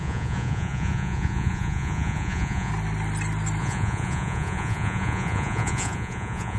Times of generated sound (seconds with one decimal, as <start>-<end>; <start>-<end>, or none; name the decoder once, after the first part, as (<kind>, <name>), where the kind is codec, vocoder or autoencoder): 0.0-2.7 (vocoder, Vocos); 3.6-6.6